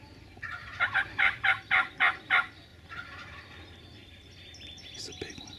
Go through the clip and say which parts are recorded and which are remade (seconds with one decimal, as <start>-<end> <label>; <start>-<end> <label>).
0.0-0.6 recorded; 0.6-1.5 remade; 1.5-2.7 recorded; 2.7-3.4 remade; 3.4-4.0 recorded; 4.0-5.6 remade